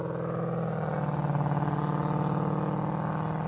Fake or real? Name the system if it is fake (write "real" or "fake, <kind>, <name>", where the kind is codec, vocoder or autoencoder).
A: real